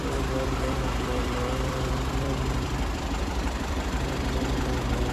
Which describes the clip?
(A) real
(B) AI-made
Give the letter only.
B